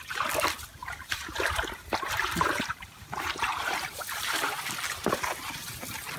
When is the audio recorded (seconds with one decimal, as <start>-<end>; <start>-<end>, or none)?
0.0-0.8; 4.5-6.2